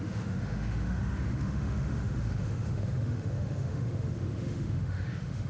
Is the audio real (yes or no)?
no